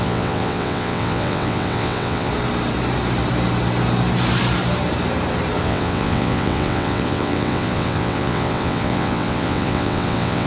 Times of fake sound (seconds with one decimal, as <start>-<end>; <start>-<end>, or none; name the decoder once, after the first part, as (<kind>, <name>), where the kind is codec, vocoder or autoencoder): 0.0-2.3 (vocoder, WaveNeXt); 5.6-10.5